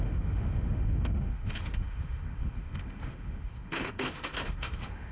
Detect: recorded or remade remade